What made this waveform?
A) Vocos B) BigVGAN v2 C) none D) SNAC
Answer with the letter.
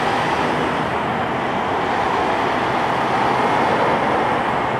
C